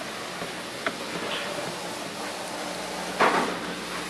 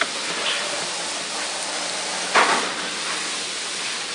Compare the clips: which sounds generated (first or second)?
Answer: second